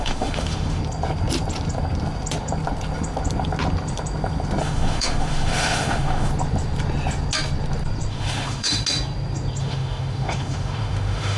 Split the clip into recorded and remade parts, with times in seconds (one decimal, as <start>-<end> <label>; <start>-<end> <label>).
0.0-0.8 remade; 0.8-4.6 recorded; 4.6-6.3 remade; 6.3-8.1 recorded; 8.1-8.8 remade; 8.8-9.6 recorded; 9.6-11.4 remade